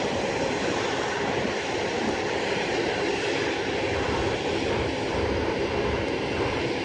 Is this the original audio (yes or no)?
no